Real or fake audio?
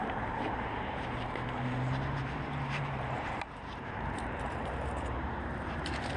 fake